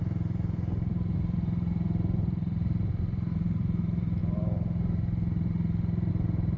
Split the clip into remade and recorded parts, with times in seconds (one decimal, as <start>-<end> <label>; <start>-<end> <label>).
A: 0.0-4.2 remade; 4.2-6.1 recorded; 6.1-6.6 remade